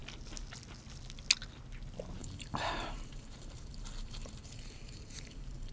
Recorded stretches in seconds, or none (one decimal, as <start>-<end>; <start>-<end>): 0.0-2.2